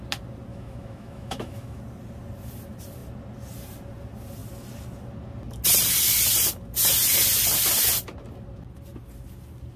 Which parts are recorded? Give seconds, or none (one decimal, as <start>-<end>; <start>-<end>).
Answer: 0.0-0.5; 1.8-9.8